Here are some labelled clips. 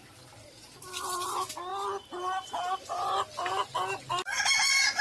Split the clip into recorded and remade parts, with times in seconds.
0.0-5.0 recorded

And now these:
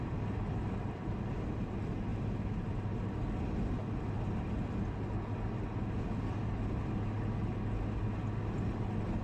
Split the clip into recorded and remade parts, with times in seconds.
0.0-9.2 recorded

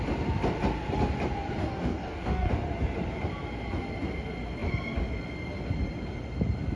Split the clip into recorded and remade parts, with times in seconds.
0.0-1.6 recorded; 1.6-2.5 remade; 2.5-6.8 recorded

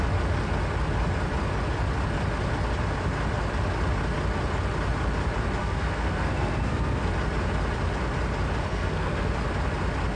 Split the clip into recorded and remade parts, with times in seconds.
0.0-5.6 recorded; 5.6-7.1 remade; 7.1-8.7 recorded; 8.7-9.3 remade; 9.3-10.2 recorded